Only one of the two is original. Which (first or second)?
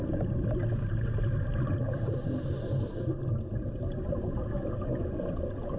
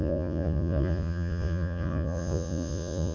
first